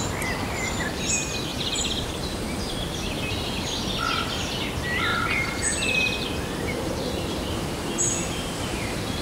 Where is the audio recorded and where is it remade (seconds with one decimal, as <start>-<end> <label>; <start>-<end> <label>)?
0.0-1.5 recorded; 1.5-2.7 remade; 2.7-5.1 recorded; 5.1-9.2 remade